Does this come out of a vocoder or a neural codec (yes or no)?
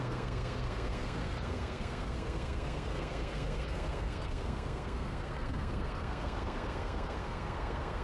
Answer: yes